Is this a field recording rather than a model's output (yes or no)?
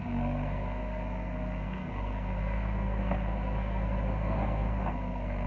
no